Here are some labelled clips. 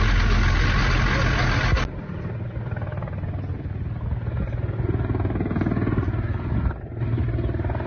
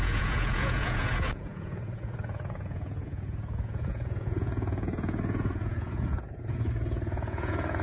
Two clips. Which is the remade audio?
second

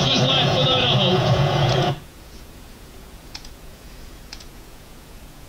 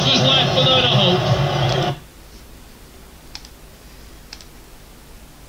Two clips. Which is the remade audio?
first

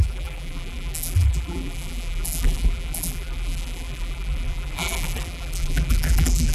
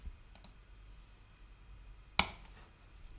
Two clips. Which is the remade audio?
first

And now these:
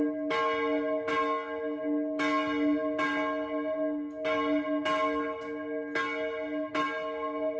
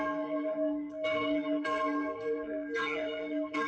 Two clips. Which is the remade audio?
second